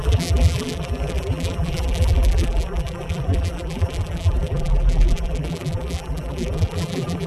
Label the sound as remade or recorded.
remade